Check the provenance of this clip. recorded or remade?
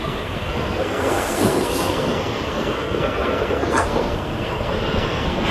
remade